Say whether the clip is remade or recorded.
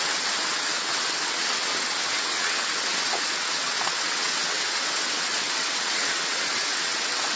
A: remade